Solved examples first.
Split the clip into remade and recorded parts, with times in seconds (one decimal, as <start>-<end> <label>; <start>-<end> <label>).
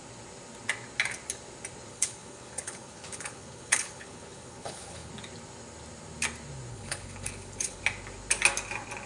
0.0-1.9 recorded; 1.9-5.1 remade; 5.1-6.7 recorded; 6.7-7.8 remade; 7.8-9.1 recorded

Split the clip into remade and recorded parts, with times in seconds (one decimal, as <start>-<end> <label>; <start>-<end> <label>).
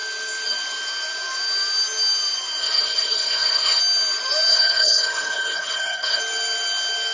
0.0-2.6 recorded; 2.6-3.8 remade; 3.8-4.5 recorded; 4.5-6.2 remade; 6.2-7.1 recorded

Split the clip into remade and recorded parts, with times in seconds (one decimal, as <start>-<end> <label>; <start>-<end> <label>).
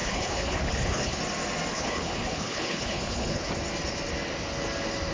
0.0-1.2 remade; 1.2-1.7 recorded; 1.7-3.5 remade; 3.5-5.1 recorded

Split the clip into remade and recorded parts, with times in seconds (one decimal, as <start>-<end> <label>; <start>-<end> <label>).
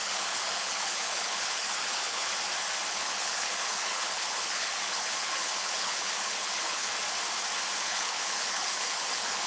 0.0-2.3 remade; 2.3-2.9 recorded; 2.9-6.9 remade; 6.9-7.8 recorded; 7.8-9.5 remade